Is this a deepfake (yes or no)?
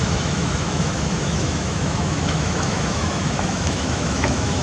yes